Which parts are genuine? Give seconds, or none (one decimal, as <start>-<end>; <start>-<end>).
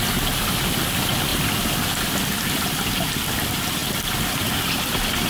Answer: 0.0-5.3